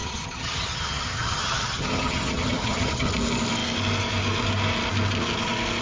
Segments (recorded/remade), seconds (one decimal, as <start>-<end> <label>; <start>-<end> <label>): 0.0-3.1 remade; 3.1-5.8 recorded